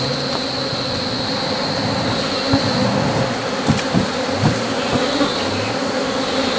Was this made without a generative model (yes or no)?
yes